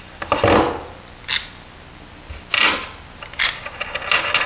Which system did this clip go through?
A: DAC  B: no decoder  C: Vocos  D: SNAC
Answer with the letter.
B